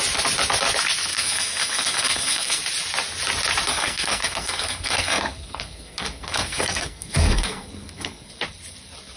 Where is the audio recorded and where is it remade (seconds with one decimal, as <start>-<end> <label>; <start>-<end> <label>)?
0.0-1.1 recorded; 1.1-2.6 remade; 2.6-3.7 recorded; 3.7-8.3 remade; 8.3-9.2 recorded